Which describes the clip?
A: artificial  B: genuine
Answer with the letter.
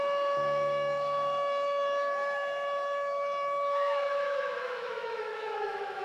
A